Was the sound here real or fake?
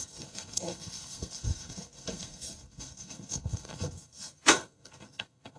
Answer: fake